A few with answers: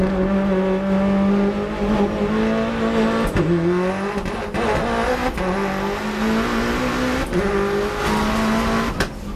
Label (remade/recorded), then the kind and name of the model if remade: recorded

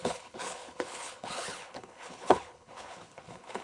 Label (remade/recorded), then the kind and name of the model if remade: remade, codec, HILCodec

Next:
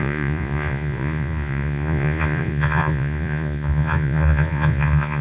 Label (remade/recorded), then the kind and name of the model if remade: remade, vocoder, Vocos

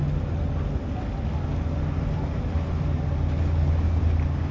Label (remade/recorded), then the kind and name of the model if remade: recorded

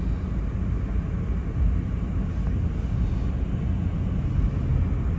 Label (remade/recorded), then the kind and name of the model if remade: recorded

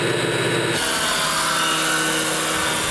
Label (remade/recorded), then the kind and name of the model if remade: recorded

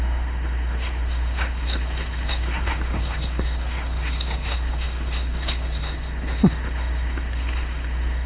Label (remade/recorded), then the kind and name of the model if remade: remade, autoencoder, DAC-VAE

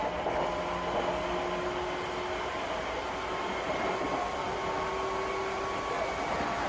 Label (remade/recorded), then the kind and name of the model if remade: recorded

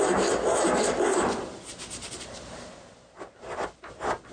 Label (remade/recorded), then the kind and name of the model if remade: recorded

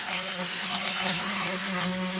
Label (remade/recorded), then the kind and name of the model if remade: remade, codec, SNAC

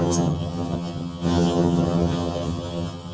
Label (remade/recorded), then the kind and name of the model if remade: remade, vocoder, HiFi-GAN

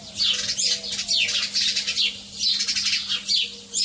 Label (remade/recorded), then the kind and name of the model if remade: recorded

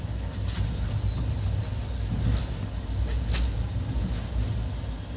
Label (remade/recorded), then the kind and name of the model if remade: recorded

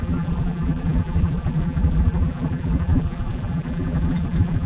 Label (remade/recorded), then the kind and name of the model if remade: remade, vocoder, BigVGAN v2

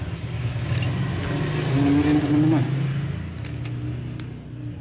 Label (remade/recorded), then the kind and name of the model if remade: recorded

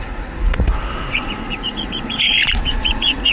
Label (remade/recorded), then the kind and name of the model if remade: remade, vocoder, Vocos